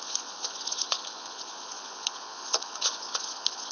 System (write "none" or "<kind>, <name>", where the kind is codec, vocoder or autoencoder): vocoder, Vocos